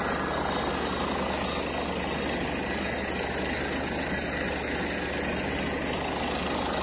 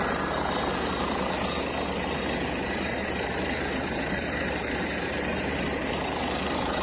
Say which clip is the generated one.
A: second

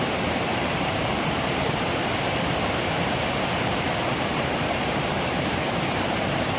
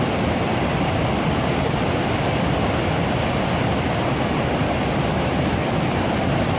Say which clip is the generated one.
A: first